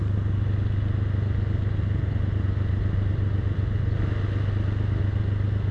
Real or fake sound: real